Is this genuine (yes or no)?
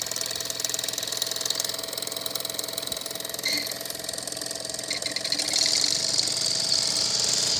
yes